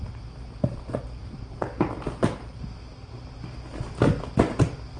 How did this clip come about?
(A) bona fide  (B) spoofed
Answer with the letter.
A